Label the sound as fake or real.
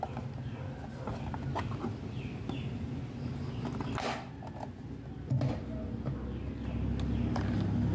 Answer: real